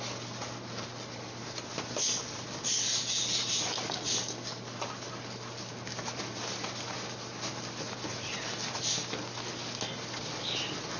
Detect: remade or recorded recorded